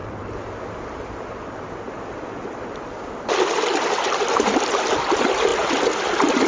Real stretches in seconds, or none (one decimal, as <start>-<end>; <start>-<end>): 0.0-3.9; 5.5-6.5